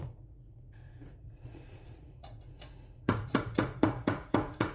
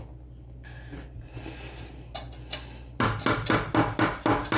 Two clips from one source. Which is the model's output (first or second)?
first